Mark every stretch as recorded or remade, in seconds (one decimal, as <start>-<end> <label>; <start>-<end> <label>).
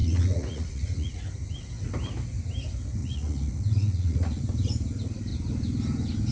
0.0-1.2 remade; 1.2-3.0 recorded; 3.0-4.4 remade; 4.4-6.3 recorded